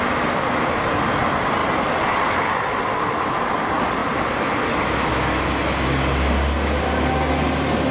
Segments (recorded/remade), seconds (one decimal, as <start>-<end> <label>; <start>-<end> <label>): 0.0-7.9 recorded